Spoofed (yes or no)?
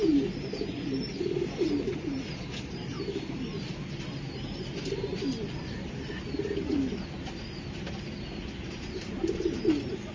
no